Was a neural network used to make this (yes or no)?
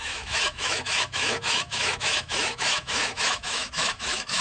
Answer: yes